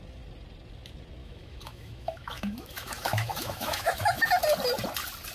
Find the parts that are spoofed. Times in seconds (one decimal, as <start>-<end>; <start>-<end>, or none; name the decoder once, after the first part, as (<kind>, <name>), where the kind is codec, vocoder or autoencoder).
1.2-4.4 (autoencoder, DAC-VAE)